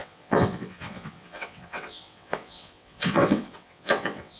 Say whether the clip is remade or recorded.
remade